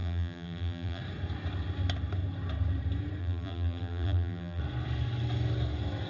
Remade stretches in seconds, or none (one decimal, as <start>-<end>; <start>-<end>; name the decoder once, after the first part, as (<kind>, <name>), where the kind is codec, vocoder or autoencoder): 0.0-1.0 (vocoder, BigVGAN v2); 3.2-4.6